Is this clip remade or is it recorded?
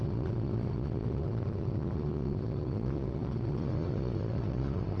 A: remade